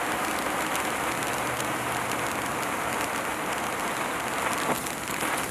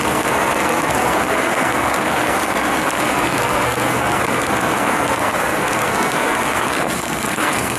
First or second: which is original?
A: first